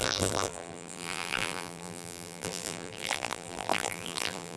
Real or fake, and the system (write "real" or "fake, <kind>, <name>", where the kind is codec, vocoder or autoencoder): fake, vocoder, BigVGAN v2